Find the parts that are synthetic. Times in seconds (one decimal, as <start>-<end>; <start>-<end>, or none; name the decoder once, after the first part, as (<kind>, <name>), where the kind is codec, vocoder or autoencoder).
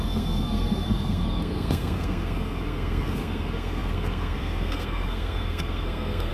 0.0-6.3 (codec, SNAC)